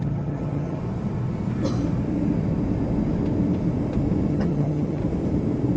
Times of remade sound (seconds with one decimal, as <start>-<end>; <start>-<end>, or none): 0.0-0.8; 4.3-5.0